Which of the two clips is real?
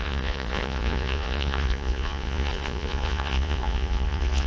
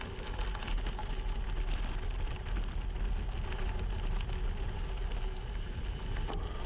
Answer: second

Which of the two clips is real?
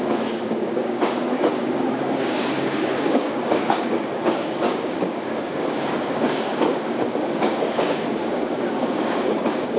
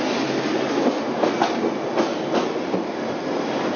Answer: second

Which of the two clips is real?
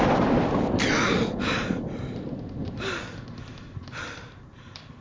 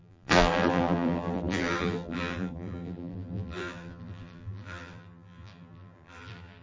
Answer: first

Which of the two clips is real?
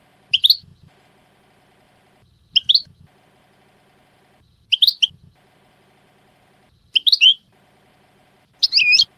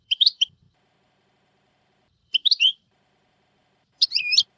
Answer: first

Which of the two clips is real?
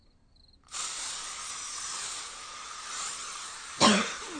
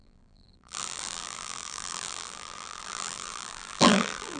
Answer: first